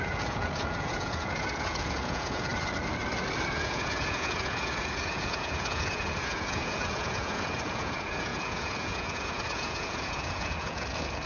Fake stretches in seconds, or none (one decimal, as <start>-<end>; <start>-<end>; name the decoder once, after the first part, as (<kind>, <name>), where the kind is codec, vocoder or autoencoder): 0.0-2.5 (vocoder, Vocos); 3.5-11.3